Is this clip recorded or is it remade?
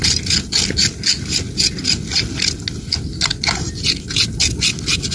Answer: recorded